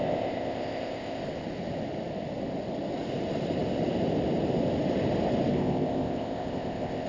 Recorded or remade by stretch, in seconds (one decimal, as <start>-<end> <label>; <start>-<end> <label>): 0.0-1.2 remade; 1.2-5.5 recorded; 5.5-7.1 remade